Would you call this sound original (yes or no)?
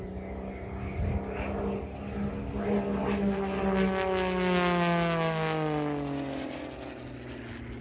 yes